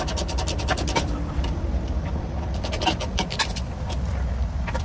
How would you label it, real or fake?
fake